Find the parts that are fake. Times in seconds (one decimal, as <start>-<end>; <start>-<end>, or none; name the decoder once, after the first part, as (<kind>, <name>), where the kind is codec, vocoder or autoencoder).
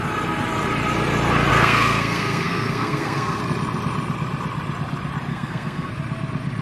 1.5-3.4 (codec, SNAC); 5.3-5.9